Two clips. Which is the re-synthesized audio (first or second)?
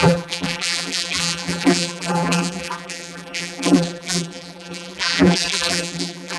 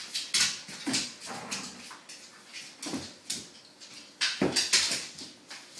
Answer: first